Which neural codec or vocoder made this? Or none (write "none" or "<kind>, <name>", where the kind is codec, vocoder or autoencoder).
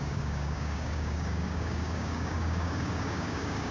codec, DAC